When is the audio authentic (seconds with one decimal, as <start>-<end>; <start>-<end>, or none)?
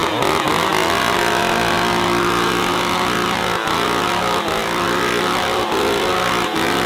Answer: 0.0-4.6; 6.1-6.9